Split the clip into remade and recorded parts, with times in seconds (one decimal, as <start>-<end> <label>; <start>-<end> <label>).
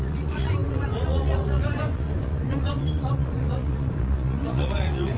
0.0-5.2 remade